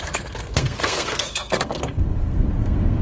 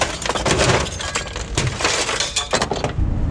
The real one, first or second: second